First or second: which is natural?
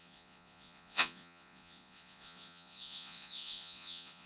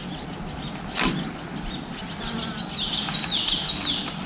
second